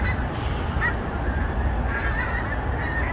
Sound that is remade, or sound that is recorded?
recorded